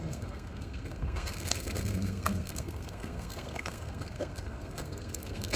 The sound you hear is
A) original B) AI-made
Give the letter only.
B